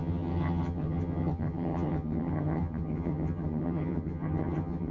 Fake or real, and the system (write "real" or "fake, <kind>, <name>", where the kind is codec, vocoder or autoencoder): fake, vocoder, HiFi-GAN